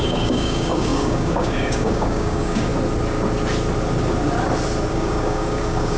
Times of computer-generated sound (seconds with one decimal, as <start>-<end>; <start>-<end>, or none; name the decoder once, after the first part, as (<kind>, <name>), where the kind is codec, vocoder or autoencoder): 0.0-2.7 (codec, DAC); 4.9-6.0